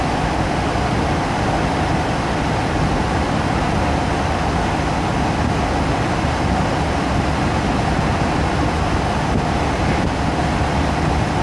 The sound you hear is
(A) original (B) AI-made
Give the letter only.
A